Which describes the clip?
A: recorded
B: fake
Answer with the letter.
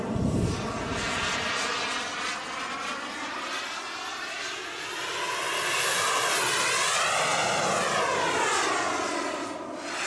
A